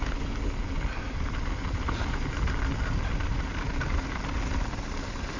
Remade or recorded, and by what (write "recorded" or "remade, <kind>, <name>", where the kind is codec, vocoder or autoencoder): recorded